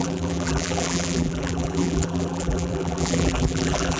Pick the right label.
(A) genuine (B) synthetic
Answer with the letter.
B